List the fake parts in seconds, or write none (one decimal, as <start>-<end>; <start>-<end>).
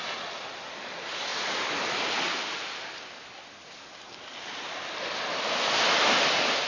none